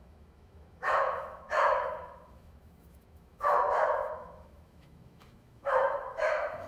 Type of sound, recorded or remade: remade